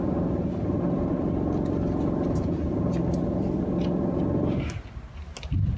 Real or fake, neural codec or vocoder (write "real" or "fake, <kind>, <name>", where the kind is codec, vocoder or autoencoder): real